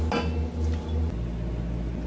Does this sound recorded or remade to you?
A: recorded